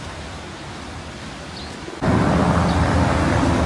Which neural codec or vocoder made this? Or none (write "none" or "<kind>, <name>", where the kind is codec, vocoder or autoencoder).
none